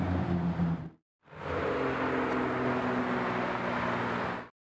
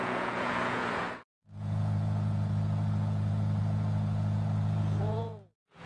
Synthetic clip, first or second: second